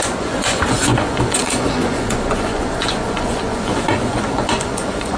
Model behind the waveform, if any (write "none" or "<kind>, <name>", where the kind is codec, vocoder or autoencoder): vocoder, Vocos